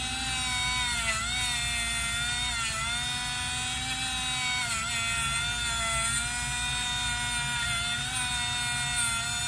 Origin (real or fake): real